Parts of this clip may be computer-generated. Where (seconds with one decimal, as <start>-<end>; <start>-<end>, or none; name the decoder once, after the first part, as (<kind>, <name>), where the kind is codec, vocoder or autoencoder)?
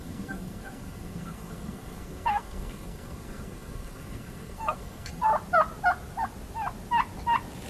0.0-5.3 (codec, SNAC)